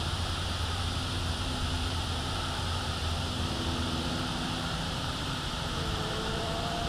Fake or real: fake